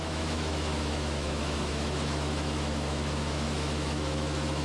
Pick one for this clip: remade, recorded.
remade